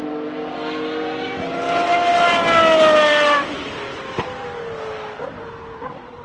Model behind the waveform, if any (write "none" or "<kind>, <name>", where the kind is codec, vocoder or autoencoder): none